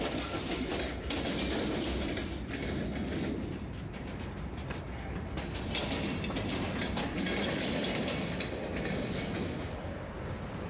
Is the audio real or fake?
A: real